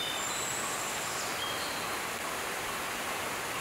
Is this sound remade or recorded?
recorded